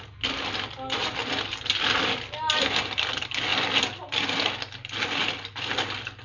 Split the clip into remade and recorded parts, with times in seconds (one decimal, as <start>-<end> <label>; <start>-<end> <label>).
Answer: 0.0-6.2 recorded